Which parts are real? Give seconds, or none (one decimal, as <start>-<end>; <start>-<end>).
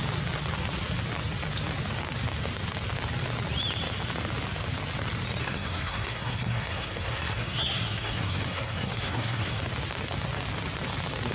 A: 0.0-5.4; 9.6-11.3